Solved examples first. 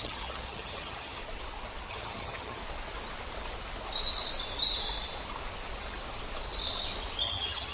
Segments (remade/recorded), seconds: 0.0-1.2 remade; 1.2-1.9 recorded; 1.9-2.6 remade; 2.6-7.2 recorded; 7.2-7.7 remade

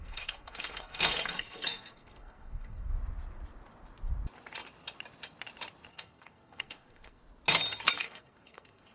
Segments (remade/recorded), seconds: 0.0-2.9 remade; 2.9-5.9 recorded; 5.9-7.2 remade; 7.2-8.0 recorded; 8.0-8.9 remade

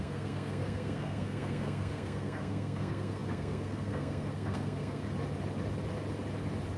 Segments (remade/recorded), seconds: 0.0-5.0 remade; 5.0-6.8 recorded

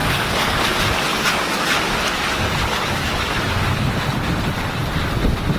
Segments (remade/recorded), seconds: 0.0-0.6 remade; 0.6-1.1 recorded; 1.1-3.9 remade; 3.9-5.6 recorded

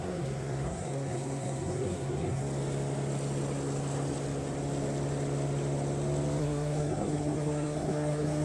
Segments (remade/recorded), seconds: 0.0-2.4 remade; 2.4-6.4 recorded; 6.4-8.4 remade

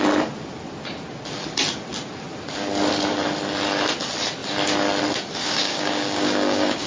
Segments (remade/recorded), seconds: 0.0-5.4 recorded; 5.4-6.9 remade

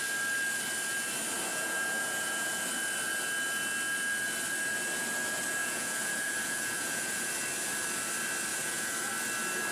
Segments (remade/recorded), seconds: 0.0-1.5 recorded; 1.5-2.7 remade; 2.7-5.6 recorded; 5.6-7.3 remade; 7.3-8.5 recorded; 8.5-9.1 remade; 9.1-9.7 recorded